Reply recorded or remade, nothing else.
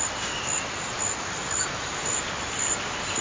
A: recorded